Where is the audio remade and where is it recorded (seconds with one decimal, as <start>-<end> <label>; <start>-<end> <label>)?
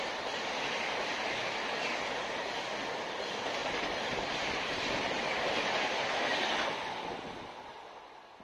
0.0-3.6 recorded; 3.6-5.8 remade; 5.8-8.4 recorded